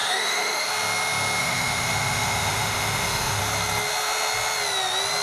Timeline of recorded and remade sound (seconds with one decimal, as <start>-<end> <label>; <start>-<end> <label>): 0.0-0.7 remade; 0.7-1.4 recorded; 1.4-3.4 remade; 3.4-5.2 recorded